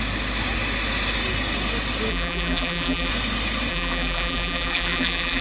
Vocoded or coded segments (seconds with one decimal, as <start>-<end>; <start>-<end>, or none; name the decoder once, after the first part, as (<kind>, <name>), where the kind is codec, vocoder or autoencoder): 2.1-3.1 (vocoder, BigVGAN v2); 3.7-5.4